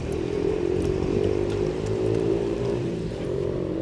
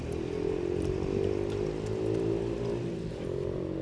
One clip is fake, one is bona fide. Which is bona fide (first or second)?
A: second